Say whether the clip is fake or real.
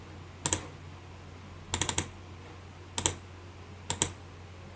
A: real